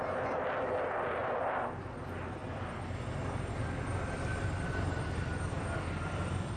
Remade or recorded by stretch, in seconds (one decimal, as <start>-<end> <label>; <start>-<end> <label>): 0.0-1.2 remade; 1.2-1.8 recorded; 1.8-6.6 remade